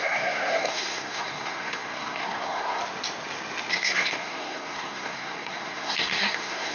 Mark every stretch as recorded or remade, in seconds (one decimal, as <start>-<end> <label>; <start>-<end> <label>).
0.0-2.8 remade; 2.8-3.7 recorded; 3.7-6.7 remade